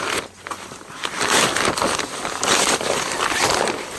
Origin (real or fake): real